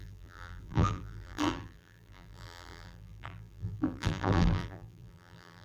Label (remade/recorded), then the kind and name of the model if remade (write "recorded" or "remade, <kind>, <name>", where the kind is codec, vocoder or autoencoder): remade, vocoder, BigVGAN v2